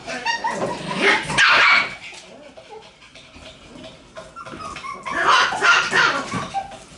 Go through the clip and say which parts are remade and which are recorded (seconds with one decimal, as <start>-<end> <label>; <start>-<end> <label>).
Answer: 0.0-7.0 recorded